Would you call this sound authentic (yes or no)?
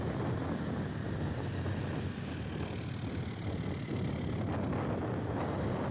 yes